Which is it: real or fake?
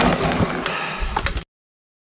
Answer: real